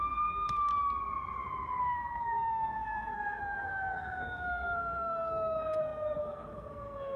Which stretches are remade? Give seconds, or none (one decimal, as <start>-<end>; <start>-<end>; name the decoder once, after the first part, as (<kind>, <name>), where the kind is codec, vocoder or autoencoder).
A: 0.0-0.7 (codec, SNAC); 1.8-7.2